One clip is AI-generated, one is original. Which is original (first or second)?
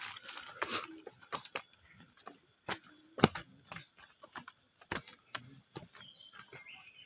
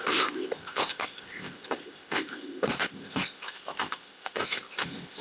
first